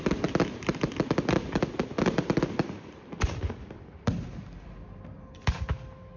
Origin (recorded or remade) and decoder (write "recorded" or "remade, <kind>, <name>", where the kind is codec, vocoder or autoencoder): recorded